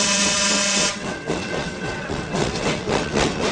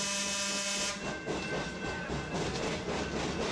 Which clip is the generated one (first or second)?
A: first